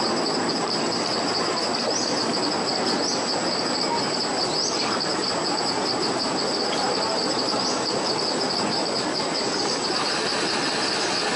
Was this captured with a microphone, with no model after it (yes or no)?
yes